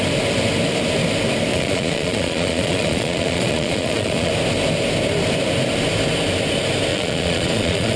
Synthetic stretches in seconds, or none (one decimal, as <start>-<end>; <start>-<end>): 1.5-4.3; 6.9-8.0